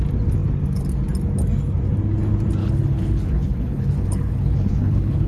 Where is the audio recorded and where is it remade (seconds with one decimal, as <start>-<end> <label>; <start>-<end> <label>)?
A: 0.0-2.6 recorded; 2.6-5.3 remade

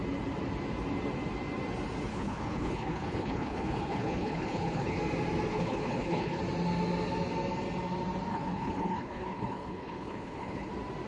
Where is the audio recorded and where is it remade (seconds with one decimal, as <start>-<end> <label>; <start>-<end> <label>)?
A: 0.0-2.1 recorded; 2.1-5.0 remade; 5.0-5.5 recorded; 5.5-6.4 remade; 6.4-8.3 recorded; 8.3-10.7 remade; 10.7-11.1 recorded

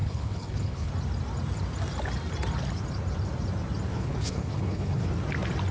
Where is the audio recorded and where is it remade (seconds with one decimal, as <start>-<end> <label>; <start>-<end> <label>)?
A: 0.0-0.9 remade; 0.9-3.9 recorded; 3.9-5.1 remade; 5.1-5.7 recorded

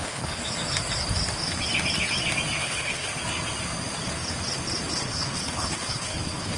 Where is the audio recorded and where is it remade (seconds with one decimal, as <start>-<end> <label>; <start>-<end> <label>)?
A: 0.0-0.4 remade; 0.4-2.6 recorded; 2.6-3.1 remade; 3.1-4.9 recorded; 4.9-6.6 remade

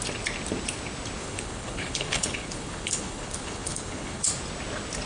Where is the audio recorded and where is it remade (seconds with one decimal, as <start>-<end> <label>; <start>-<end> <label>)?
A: 0.0-1.2 recorded; 1.2-4.3 remade; 4.3-5.1 recorded

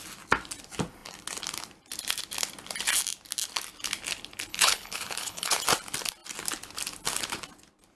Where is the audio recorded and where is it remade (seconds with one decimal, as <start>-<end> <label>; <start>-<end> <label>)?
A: 0.0-4.5 recorded; 4.5-5.6 remade; 5.6-8.0 recorded

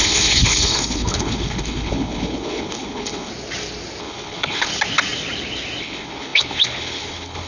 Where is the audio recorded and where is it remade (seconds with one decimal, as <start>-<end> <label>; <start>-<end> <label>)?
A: 0.0-3.3 remade; 3.3-4.0 recorded; 4.0-4.7 remade; 4.7-5.8 recorded; 5.8-7.5 remade

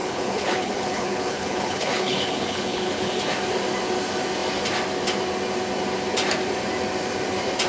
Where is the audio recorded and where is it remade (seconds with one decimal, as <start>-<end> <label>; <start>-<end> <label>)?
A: 0.0-3.1 remade; 3.1-7.7 recorded